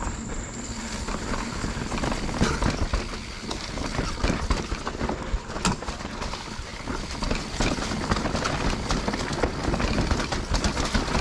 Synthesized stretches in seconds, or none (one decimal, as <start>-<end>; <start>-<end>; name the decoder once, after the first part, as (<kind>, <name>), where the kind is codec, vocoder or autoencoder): none